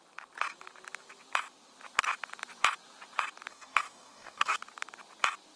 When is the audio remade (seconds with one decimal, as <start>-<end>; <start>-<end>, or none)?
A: 3.5-4.6